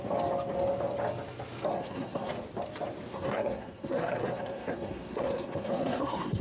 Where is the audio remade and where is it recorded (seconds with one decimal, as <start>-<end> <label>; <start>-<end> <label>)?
0.0-1.7 recorded; 1.7-2.3 remade; 2.3-3.1 recorded; 3.1-6.4 remade

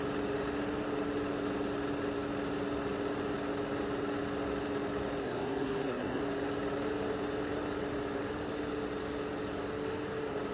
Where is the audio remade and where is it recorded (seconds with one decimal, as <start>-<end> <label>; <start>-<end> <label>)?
0.0-5.2 recorded; 5.2-6.2 remade; 6.2-10.5 recorded

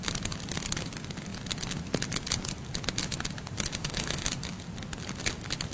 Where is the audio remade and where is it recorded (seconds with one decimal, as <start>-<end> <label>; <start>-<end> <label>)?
0.0-3.7 recorded; 3.7-4.3 remade; 4.3-5.7 recorded